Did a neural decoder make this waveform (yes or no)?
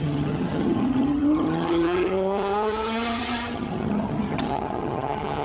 yes